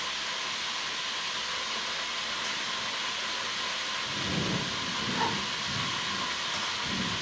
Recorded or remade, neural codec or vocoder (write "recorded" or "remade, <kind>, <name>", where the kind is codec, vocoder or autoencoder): recorded